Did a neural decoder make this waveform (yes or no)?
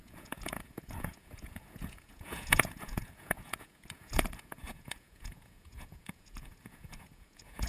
yes